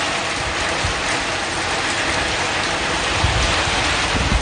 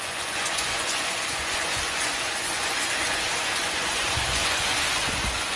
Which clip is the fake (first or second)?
second